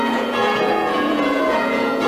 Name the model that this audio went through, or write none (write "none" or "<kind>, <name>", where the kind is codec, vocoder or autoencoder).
vocoder, Vocos